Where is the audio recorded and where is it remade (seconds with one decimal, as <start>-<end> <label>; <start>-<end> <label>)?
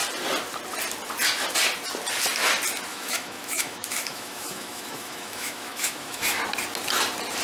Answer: 0.0-2.9 recorded; 2.9-6.4 remade; 6.4-7.4 recorded